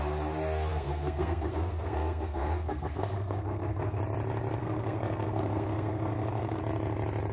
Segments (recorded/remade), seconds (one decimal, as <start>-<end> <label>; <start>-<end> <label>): 0.0-0.7 recorded; 0.7-4.0 remade; 4.0-4.6 recorded; 4.6-6.6 remade; 6.6-7.3 recorded